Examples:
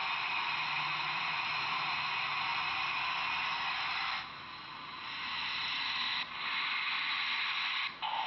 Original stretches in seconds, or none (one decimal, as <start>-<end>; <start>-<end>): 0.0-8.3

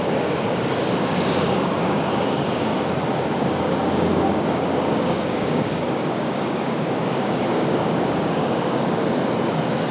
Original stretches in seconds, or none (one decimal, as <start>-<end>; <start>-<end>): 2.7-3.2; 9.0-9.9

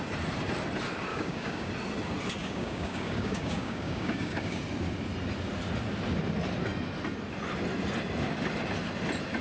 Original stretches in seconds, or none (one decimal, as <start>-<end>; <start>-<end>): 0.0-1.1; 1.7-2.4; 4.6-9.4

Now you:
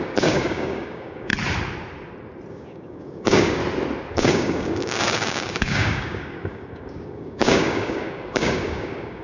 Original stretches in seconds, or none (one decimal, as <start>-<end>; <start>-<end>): 1.3-2.5; 3.6-4.1